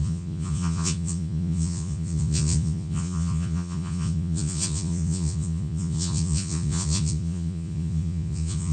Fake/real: fake